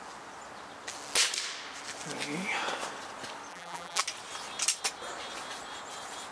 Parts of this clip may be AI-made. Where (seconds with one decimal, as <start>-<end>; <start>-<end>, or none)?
3.5-4.0